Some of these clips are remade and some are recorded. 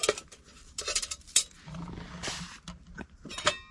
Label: recorded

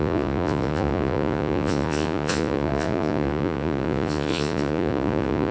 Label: remade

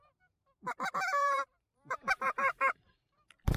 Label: remade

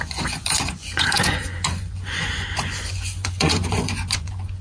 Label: remade